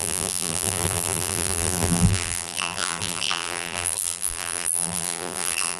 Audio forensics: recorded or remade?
remade